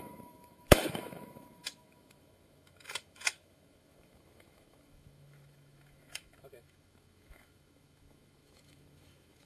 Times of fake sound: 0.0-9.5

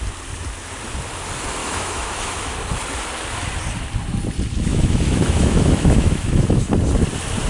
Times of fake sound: 1.6-2.5; 4.7-6.7

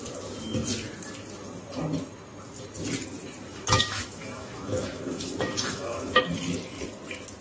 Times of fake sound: 3.5-6.2

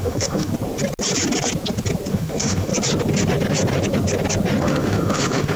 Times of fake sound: 0.0-0.5; 2.1-2.7; 4.6-5.6

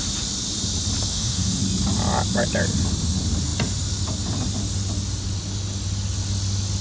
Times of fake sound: 1.1-1.6

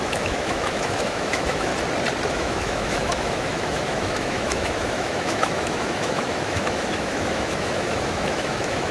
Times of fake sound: 0.0-1.7; 2.3-8.9

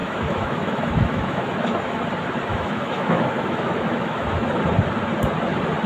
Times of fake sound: 0.0-2.0; 2.5-4.5